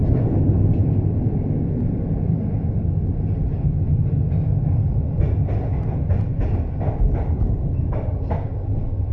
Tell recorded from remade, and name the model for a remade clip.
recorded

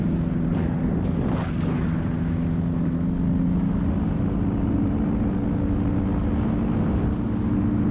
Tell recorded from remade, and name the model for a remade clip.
recorded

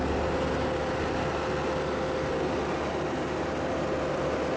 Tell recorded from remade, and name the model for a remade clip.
recorded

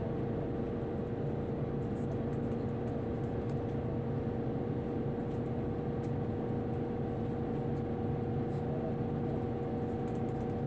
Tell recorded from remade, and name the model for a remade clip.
recorded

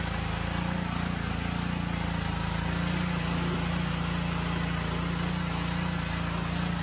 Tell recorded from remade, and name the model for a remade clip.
recorded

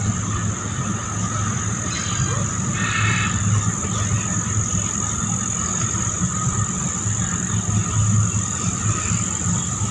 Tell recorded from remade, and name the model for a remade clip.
recorded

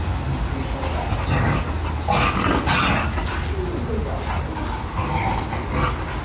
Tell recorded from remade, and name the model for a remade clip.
recorded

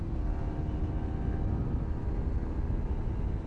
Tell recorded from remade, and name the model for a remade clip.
recorded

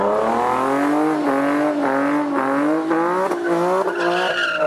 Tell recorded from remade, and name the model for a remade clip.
recorded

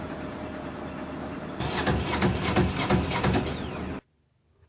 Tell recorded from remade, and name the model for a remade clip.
recorded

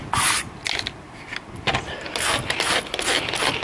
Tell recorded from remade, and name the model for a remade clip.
recorded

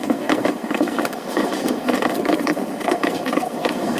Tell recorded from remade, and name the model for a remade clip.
remade, codec, SNAC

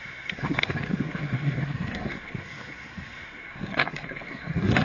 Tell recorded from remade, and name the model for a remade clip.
remade, codec, SNAC